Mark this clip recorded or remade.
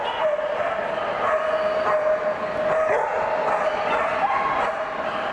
recorded